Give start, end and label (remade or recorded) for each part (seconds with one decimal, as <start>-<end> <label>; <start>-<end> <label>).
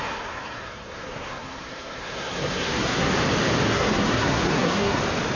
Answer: 0.0-3.1 remade; 3.1-3.7 recorded; 3.7-5.0 remade; 5.0-5.4 recorded